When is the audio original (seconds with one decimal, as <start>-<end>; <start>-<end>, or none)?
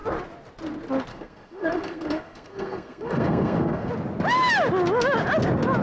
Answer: 0.0-1.1; 3.9-5.8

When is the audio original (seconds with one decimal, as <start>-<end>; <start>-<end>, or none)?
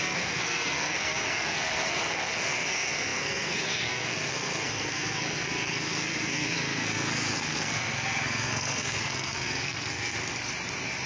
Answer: 10.2-11.1